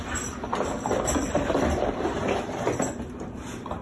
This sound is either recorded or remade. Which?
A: remade